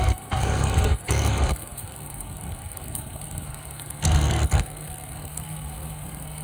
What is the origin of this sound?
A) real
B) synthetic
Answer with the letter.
B